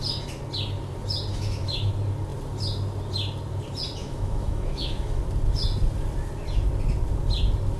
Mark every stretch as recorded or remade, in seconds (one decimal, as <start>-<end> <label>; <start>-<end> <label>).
0.0-1.3 recorded; 1.3-1.9 remade; 1.9-4.0 recorded; 4.0-5.2 remade; 5.2-7.8 recorded